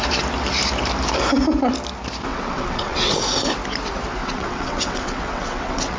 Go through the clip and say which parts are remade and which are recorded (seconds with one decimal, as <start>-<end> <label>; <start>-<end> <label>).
0.0-2.3 recorded; 2.3-3.1 remade; 3.1-4.2 recorded; 4.2-6.0 remade